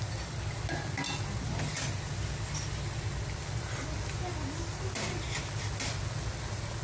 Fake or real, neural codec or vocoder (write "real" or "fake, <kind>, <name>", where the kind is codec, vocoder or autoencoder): real